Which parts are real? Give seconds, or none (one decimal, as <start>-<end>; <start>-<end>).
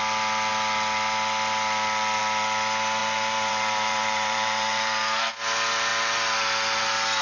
0.0-3.0; 5.3-7.2